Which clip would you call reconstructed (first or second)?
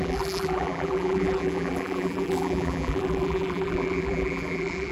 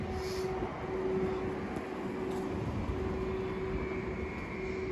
first